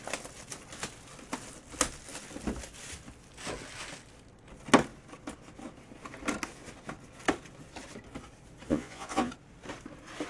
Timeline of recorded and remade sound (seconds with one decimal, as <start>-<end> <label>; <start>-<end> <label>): 0.0-8.7 recorded; 8.7-9.3 remade; 9.3-10.3 recorded